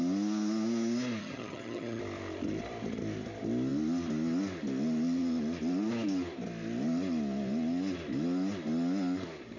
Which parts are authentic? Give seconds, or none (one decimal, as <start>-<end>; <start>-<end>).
0.0-1.2; 2.0-9.6